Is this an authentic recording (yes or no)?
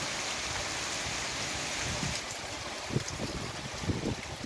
yes